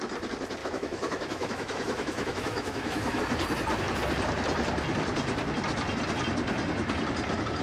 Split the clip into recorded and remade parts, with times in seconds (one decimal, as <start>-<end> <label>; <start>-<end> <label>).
0.0-0.6 recorded; 0.6-3.2 remade; 3.2-7.6 recorded